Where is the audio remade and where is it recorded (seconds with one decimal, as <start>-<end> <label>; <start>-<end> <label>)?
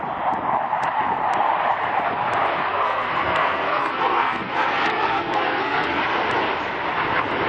0.0-2.7 recorded; 2.7-6.0 remade; 6.0-7.5 recorded